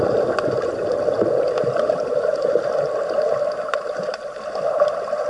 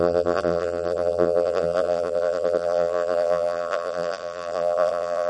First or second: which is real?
first